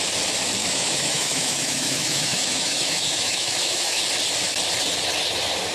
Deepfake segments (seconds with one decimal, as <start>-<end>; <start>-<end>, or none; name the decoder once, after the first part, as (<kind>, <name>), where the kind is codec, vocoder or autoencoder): 0.6-4.0 (autoencoder, DAC-VAE)